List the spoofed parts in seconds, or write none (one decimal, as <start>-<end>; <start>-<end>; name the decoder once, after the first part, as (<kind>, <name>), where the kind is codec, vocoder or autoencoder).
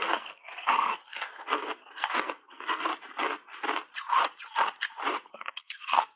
0.0-2.9 (codec, SNAC); 5.3-6.2